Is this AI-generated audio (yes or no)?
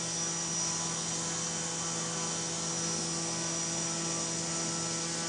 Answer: no